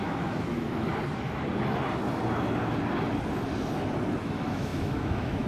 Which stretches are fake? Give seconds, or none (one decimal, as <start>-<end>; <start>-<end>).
0.0-0.9; 4.2-5.5